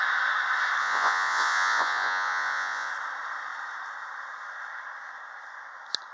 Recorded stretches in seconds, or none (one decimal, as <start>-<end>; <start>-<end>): 0.0-0.8; 2.9-6.1